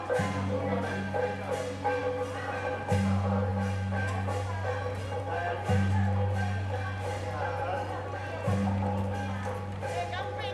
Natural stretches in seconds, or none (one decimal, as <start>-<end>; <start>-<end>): 0.0-10.5